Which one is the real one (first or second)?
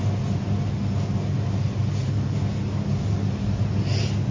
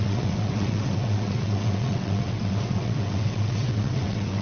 first